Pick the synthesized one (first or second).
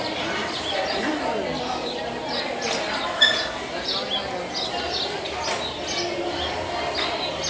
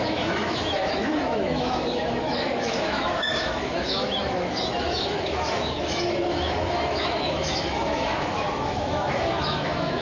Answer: second